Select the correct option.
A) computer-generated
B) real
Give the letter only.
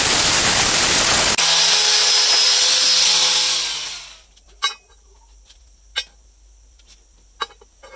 B